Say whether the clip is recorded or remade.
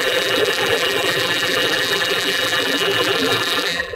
remade